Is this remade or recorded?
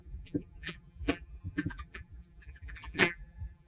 remade